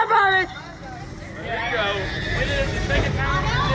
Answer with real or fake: real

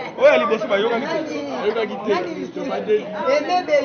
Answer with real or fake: real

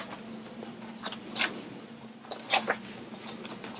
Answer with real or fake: real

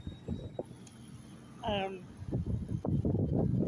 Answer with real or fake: real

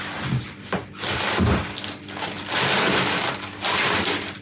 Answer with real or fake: real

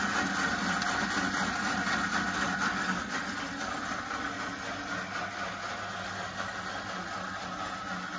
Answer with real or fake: real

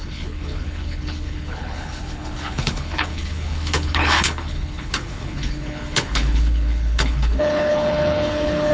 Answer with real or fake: fake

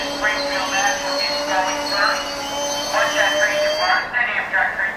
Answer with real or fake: real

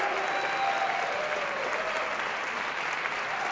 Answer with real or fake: real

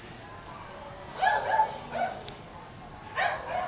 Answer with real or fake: real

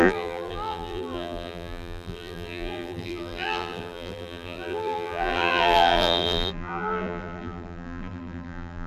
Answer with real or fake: fake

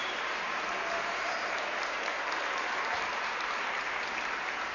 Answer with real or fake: fake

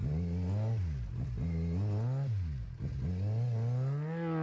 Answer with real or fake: real